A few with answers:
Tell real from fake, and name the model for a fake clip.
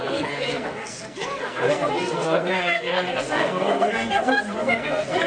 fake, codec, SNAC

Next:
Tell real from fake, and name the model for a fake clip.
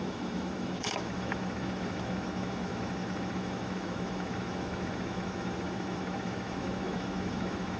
fake, autoencoder, DAC-VAE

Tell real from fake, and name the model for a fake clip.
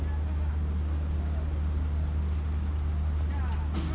real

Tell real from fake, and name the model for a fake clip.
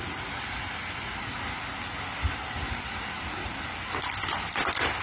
real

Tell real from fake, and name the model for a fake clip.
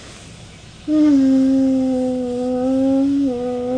real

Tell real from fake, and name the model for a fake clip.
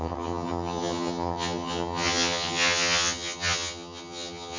fake, vocoder, HiFi-GAN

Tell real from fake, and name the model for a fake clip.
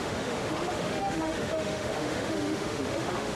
fake, autoencoder, DAC-VAE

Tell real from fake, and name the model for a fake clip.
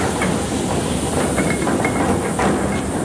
real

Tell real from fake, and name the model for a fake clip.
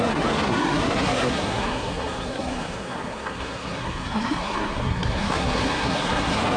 fake, codec, SNAC